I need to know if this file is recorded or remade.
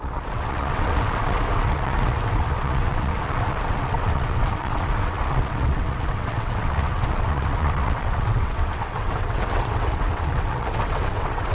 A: remade